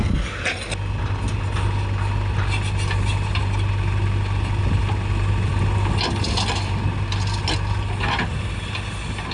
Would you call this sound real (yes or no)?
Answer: yes